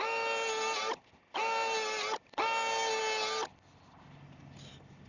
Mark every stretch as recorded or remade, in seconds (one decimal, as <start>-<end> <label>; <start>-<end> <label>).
0.0-5.1 recorded